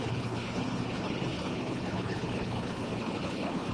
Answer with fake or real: fake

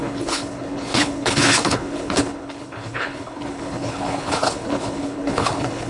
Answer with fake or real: fake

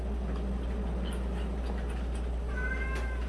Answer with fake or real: real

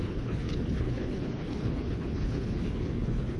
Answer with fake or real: fake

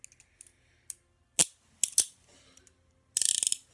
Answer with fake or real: real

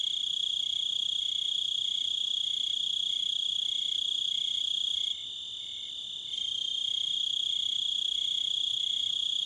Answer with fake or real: real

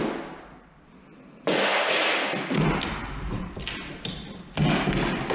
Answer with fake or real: real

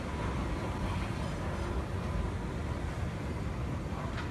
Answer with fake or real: real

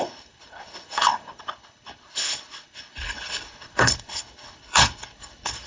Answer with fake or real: fake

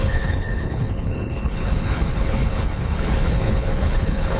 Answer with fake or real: fake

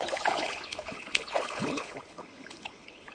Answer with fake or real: fake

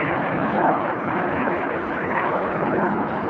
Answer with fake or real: fake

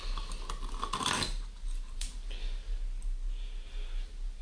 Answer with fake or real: real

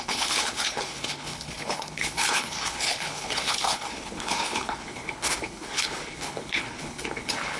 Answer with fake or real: fake